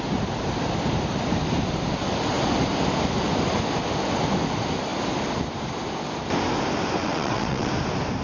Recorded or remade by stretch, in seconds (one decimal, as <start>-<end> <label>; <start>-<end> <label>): 0.0-7.0 recorded; 7.0-7.7 remade; 7.7-8.2 recorded